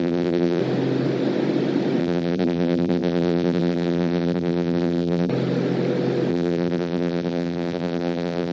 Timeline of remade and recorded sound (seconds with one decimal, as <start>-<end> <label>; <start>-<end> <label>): 0.0-0.6 remade; 0.6-2.0 recorded; 2.0-5.3 remade; 5.3-6.3 recorded; 6.3-8.5 remade

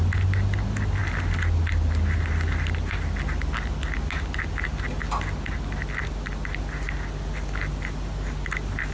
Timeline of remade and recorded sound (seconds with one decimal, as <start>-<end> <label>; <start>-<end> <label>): 0.0-8.9 recorded

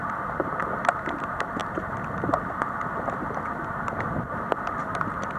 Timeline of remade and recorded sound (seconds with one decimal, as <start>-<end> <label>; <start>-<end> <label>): 0.0-0.6 remade; 0.6-5.4 recorded

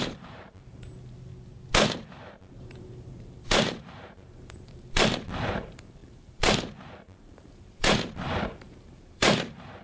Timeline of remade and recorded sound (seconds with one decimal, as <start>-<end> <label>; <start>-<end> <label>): 0.0-1.3 remade; 1.3-2.5 recorded; 2.5-9.8 remade